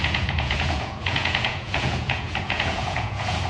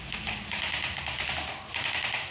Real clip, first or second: second